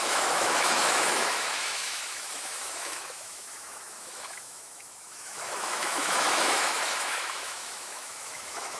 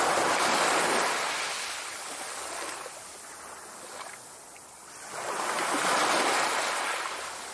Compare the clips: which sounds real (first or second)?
second